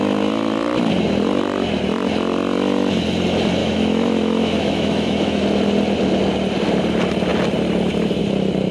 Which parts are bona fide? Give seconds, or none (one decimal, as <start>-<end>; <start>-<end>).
0.0-3.6; 5.4-8.7